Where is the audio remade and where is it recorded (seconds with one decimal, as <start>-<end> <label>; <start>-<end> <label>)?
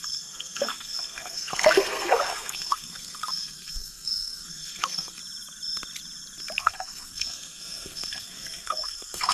0.0-5.2 remade; 5.2-6.6 recorded; 6.6-9.3 remade